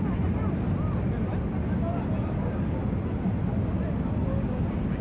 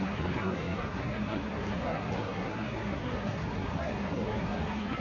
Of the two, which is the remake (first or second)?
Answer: second